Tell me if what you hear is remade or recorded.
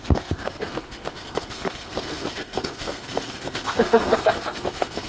remade